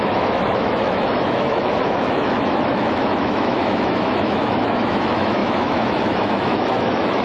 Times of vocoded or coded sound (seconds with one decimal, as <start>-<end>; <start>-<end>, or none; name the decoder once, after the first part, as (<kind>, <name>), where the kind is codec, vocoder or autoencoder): 0.0-7.2 (autoencoder, DAC-VAE)